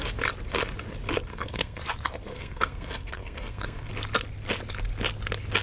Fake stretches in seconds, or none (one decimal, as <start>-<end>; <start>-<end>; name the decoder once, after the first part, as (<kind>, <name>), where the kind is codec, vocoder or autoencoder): 1.3-1.8 (codec, SNAC); 2.3-3.9